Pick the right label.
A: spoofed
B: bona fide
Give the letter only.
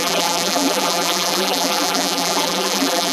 A